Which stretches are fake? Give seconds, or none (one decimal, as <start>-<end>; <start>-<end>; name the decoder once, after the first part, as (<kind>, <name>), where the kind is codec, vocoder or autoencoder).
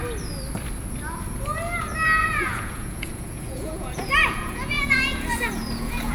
2.2-6.1 (vocoder, Vocos)